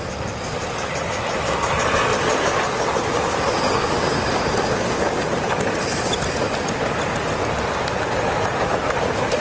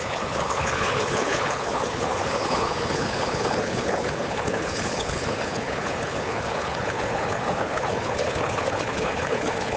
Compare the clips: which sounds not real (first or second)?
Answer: second